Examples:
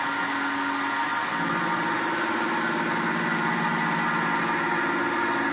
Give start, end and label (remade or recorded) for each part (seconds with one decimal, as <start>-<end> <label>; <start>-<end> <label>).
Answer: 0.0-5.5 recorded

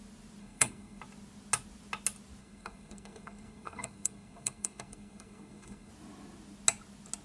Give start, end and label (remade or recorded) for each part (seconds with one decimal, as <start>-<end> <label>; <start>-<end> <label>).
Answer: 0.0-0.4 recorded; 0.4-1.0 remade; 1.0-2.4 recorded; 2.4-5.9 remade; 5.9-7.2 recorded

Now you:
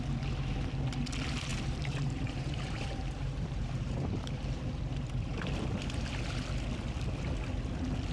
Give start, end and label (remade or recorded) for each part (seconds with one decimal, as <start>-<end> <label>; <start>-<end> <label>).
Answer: 0.0-1.5 recorded; 1.5-4.8 remade; 4.8-8.1 recorded

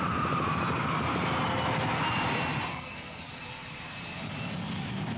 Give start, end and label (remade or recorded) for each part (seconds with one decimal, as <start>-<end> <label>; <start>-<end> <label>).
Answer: 0.0-2.7 recorded; 2.7-3.3 remade; 3.3-5.2 recorded

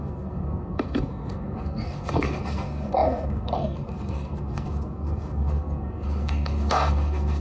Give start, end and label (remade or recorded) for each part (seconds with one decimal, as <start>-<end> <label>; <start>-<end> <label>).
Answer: 0.0-7.4 remade

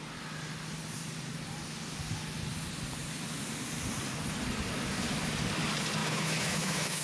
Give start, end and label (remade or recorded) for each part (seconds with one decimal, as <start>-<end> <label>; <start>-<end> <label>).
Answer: 0.0-6.0 recorded; 6.0-7.0 remade